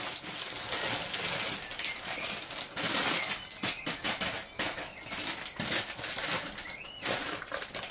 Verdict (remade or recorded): recorded